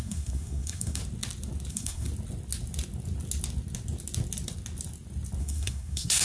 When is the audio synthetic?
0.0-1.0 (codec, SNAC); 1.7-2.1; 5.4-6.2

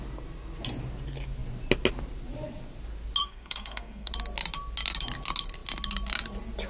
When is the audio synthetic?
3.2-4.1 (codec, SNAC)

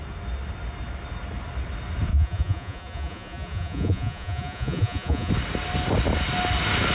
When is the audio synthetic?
2.1-5.3 (vocoder, Vocos)

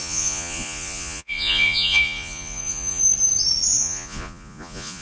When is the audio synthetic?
0.0-3.0 (vocoder, Vocos); 3.8-5.0

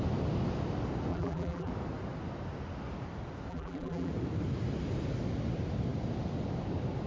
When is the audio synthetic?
1.1-1.7 (vocoder, BigVGAN v2); 3.5-4.1